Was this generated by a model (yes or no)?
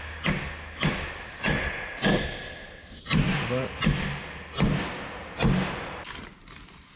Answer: no